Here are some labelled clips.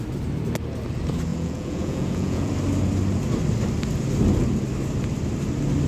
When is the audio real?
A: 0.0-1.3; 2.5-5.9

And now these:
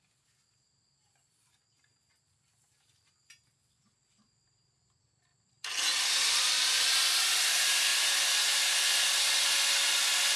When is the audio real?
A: 0.0-10.4